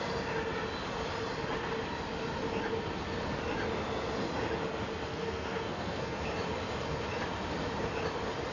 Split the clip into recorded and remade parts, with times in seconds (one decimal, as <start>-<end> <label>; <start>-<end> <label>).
0.0-5.1 recorded; 5.1-6.2 remade; 6.2-8.5 recorded